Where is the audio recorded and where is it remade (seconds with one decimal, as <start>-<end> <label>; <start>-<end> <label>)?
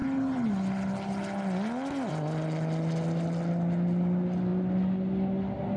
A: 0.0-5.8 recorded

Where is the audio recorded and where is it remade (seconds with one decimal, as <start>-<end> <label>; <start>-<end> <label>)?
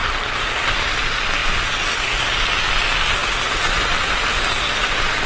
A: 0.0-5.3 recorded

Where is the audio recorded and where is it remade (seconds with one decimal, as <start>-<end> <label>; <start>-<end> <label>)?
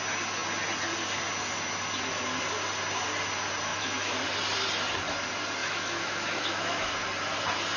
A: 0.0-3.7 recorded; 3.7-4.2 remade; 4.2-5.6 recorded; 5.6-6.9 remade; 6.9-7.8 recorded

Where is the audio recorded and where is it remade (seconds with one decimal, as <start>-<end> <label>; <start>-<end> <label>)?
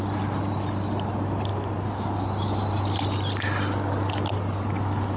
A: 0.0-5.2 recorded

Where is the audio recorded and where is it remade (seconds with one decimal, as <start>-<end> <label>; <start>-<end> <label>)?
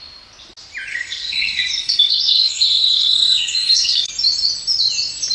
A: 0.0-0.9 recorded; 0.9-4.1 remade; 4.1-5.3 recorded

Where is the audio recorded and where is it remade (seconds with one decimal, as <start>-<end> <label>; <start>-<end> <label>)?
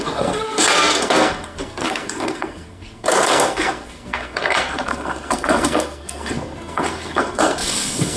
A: 0.0-8.2 remade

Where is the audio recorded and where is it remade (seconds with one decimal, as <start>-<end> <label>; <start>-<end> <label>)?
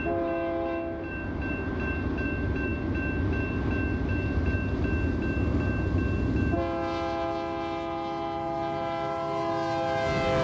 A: 0.0-10.4 recorded